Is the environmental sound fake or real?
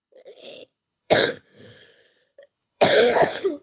fake